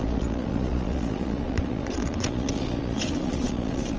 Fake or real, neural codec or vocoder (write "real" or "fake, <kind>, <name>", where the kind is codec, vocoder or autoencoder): fake, vocoder, Vocos